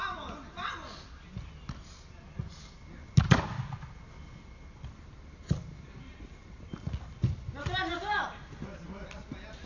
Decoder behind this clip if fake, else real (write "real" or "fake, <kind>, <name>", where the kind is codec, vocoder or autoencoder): real